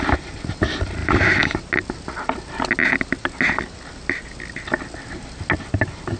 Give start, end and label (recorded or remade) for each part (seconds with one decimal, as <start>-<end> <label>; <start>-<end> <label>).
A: 0.0-6.2 recorded